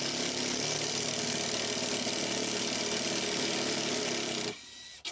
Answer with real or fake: real